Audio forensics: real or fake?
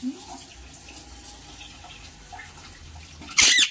real